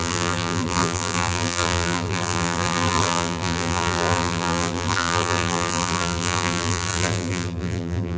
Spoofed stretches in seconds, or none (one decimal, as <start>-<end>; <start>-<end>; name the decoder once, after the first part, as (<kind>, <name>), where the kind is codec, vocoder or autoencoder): 0.0-8.2 (vocoder, BigVGAN v2)